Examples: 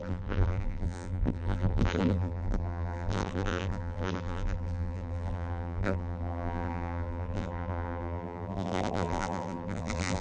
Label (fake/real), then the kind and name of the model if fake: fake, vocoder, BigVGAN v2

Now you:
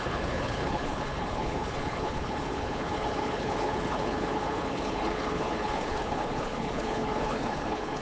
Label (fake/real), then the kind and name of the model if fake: fake, codec, HILCodec